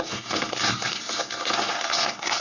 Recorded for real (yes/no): no